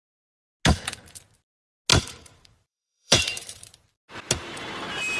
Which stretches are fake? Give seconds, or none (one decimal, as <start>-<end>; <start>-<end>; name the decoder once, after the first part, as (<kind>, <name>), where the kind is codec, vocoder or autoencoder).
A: 1.9-3.7 (vocoder, BigVGAN v2)